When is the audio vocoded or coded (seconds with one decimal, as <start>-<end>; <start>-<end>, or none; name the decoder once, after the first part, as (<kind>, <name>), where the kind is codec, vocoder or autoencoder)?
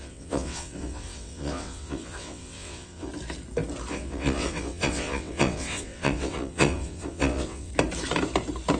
0.0-3.1 (vocoder, WaveNeXt); 3.9-7.7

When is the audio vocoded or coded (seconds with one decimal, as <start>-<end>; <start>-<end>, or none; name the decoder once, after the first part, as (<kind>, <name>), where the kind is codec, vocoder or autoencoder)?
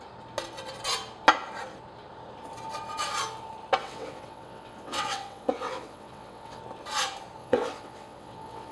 3.8-6.6 (vocoder, WaveNeXt); 7.4-8.7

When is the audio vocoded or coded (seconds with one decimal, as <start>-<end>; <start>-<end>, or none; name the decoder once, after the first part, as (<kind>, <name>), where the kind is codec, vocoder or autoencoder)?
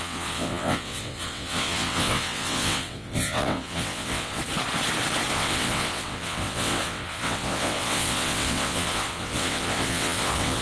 0.0-4.4 (vocoder, WaveNeXt); 5.3-10.6